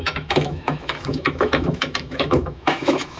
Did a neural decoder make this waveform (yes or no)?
yes